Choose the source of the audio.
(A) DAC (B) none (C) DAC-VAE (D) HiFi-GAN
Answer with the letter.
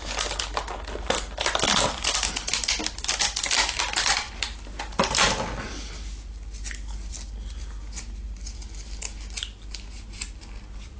B